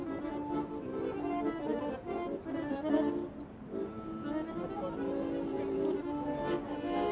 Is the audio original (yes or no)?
no